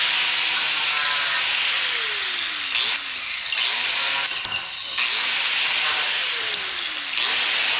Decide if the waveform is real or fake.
real